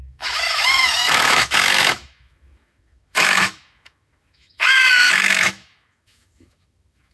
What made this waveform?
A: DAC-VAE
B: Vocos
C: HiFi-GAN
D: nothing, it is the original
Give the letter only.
A